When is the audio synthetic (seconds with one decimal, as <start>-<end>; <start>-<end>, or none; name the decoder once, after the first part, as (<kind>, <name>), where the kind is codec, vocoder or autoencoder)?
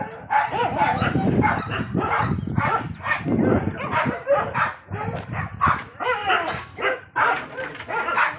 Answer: 0.6-5.6 (vocoder, BigVGAN v2); 6.2-7.8